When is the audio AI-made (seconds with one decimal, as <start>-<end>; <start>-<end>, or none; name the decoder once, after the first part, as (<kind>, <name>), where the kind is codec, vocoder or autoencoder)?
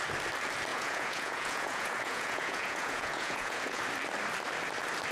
0.7-3.8 (vocoder, Vocos)